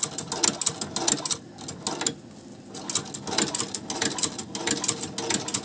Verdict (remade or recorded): recorded